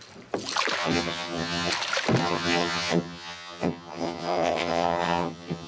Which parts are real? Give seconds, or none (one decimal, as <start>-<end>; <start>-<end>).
0.0-0.8; 1.7-2.2